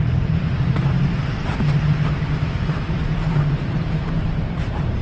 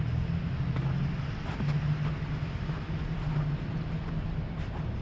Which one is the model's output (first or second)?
first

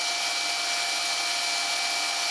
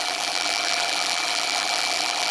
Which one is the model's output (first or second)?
second